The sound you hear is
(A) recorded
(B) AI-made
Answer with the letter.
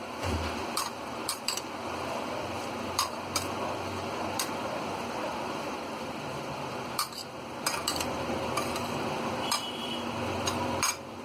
B